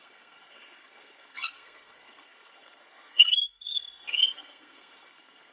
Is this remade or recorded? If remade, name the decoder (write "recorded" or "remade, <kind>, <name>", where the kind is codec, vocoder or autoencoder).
remade, codec, SNAC